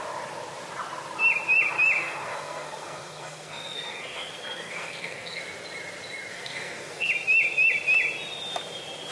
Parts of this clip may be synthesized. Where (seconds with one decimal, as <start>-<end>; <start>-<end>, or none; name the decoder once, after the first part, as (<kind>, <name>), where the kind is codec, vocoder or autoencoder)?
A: 2.0-5.4 (codec, SNAC); 6.3-7.1